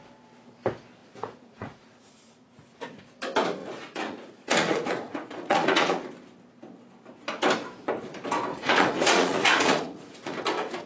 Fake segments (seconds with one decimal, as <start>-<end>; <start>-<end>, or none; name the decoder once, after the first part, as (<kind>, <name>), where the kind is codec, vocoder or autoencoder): 1.0-3.0 (vocoder, Vocos); 3.6-6.0; 8.5-10.4